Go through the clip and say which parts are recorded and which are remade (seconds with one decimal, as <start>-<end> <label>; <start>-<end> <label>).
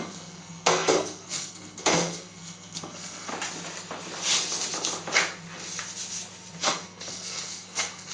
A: 0.0-3.3 remade; 3.3-6.6 recorded; 6.6-8.1 remade